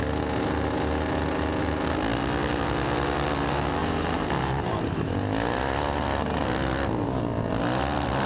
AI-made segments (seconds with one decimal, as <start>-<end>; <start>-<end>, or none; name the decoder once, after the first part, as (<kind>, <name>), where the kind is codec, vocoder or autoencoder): 3.8-4.7 (vocoder, BigVGAN v2)